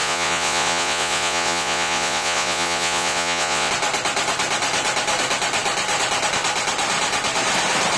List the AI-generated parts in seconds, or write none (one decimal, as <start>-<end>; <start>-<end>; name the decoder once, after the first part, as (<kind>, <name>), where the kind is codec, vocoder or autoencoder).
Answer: 0.0-3.7 (vocoder, Vocos)